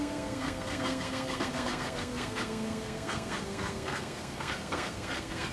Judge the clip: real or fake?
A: fake